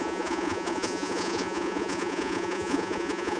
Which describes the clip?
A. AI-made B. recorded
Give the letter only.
A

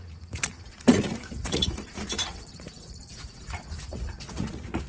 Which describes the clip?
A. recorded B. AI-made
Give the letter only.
B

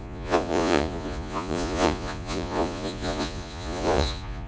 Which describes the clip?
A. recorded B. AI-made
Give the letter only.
B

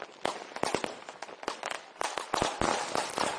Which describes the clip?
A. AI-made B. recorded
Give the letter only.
B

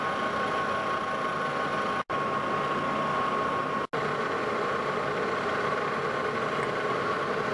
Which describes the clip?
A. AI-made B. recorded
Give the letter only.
B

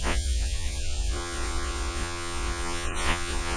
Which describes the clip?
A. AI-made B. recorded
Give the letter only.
A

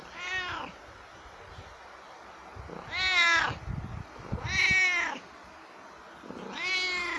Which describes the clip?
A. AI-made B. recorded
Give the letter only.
B